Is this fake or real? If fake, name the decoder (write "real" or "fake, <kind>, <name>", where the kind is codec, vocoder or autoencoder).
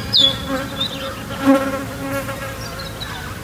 real